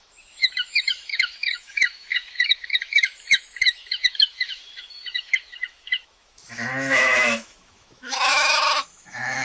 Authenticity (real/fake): fake